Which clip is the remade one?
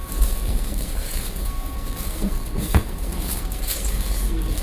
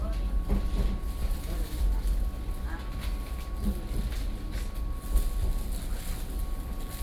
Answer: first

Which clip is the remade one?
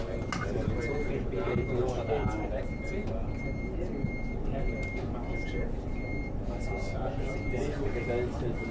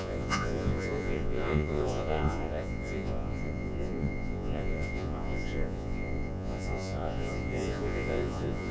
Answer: second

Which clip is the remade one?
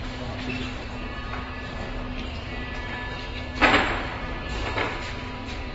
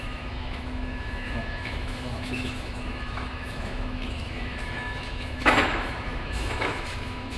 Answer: second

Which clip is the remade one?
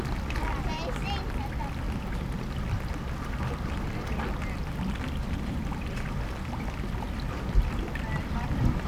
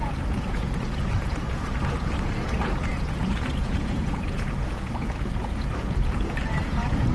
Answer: second